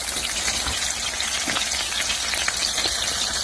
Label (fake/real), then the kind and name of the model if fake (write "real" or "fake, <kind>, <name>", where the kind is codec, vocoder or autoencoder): real